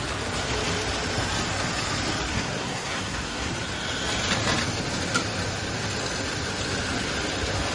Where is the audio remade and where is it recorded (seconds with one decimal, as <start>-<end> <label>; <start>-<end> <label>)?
0.0-2.3 recorded; 2.3-3.5 remade; 3.5-7.7 recorded